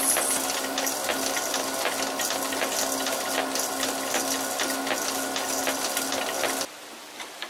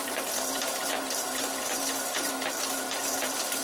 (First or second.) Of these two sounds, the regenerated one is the second